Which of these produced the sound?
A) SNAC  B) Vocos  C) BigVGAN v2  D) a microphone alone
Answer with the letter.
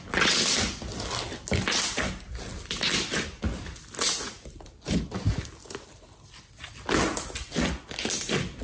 D